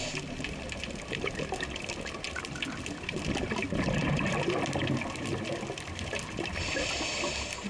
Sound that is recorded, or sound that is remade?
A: recorded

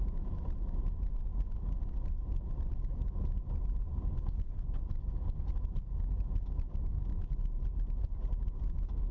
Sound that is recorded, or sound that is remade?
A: recorded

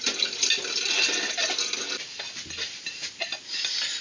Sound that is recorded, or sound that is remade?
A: recorded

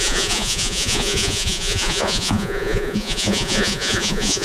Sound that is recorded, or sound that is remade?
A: remade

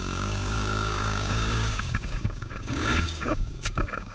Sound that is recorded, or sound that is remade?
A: remade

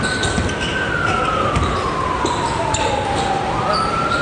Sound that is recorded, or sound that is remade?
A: recorded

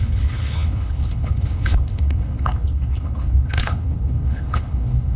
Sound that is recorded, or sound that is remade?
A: remade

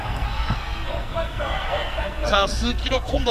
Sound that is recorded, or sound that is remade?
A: remade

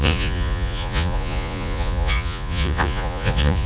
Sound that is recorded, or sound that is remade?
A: remade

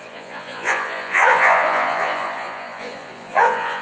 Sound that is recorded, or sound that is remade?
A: remade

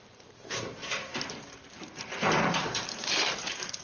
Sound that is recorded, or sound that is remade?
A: remade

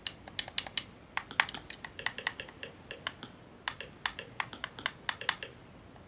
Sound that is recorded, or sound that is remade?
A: recorded